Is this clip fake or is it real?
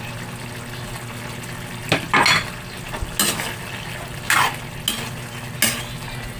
real